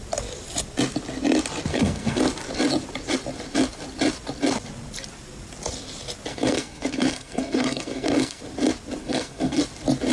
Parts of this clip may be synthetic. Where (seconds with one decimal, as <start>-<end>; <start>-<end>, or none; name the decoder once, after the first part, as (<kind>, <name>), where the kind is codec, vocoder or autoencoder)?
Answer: 1.7-2.2 (codec, SNAC); 6.3-8.4; 9.0-9.6